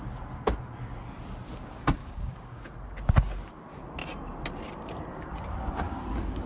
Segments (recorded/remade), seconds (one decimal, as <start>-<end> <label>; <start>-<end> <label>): 0.0-2.0 recorded; 2.0-2.6 remade; 2.6-6.5 recorded